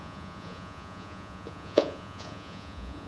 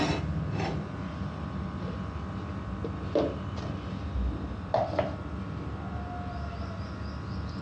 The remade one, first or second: first